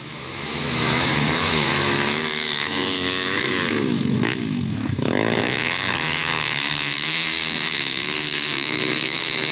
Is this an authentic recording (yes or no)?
no